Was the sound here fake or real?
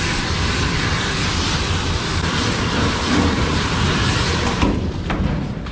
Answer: fake